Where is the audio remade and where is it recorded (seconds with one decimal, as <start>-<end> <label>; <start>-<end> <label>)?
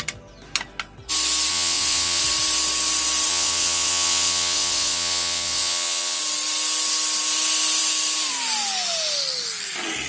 0.0-1.5 recorded; 1.5-2.2 remade; 2.2-3.3 recorded; 3.3-6.2 remade; 6.2-10.1 recorded